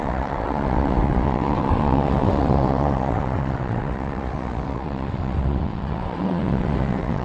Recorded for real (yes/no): no